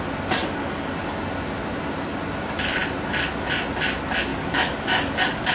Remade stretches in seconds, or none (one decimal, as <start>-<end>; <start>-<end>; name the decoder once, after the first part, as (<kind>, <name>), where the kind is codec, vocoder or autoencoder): 0.4-1.0 (codec, DAC); 4.3-5.5

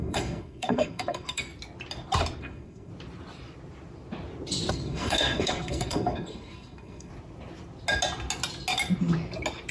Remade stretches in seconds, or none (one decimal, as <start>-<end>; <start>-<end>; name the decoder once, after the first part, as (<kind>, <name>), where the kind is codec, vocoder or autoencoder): 0.0-1.5 (codec, SNAC); 2.4-2.9; 4.7-7.1

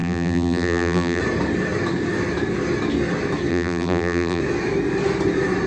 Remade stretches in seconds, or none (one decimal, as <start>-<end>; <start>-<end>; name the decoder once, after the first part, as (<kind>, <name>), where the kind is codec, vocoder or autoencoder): 0.0-1.2 (vocoder, BigVGAN v2); 3.5-4.4

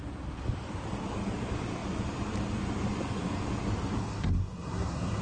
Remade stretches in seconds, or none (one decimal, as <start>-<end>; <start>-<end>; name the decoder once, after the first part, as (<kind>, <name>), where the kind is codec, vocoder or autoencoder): 4.0-5.2 (codec, SNAC)

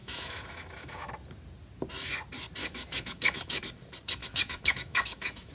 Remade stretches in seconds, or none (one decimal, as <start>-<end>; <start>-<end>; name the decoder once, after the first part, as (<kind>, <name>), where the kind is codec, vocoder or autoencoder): 0.0-1.1 (autoencoder, DAC-VAE); 2.6-3.6; 4.2-5.5

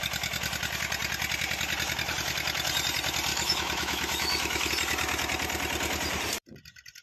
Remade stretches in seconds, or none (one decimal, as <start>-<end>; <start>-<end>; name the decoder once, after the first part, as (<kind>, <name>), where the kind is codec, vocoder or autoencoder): 3.3-4.7 (autoencoder, DAC-VAE)

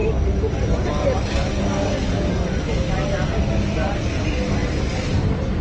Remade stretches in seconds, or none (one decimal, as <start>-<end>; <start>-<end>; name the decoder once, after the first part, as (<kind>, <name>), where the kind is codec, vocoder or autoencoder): 4.6-5.6 (vocoder, BigVGAN v2)